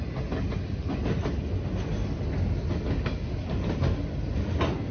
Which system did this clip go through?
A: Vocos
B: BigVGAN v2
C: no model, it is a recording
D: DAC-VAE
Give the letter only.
C